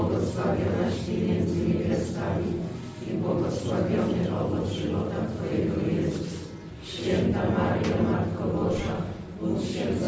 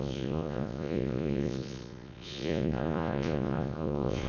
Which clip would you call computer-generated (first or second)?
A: second